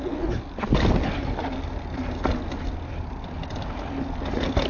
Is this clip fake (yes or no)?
no